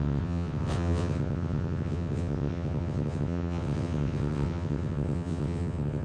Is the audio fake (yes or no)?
yes